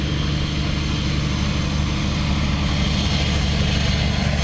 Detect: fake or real real